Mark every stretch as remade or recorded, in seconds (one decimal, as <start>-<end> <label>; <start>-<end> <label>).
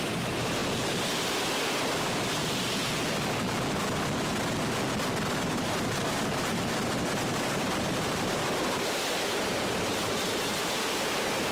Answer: 0.0-0.6 remade; 0.6-5.4 recorded; 5.4-11.5 remade